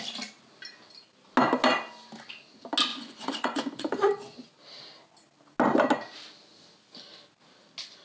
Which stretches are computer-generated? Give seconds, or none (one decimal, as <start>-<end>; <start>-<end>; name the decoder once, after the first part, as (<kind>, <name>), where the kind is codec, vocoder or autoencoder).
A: 2.9-3.8 (vocoder, Vocos)